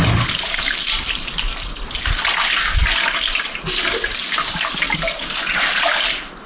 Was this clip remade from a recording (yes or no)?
no